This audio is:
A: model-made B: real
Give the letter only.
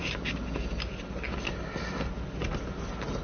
B